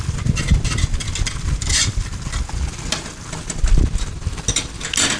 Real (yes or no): yes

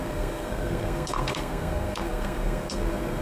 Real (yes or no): no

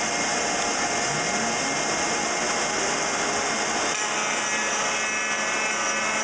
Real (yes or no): yes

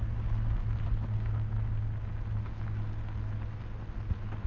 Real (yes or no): yes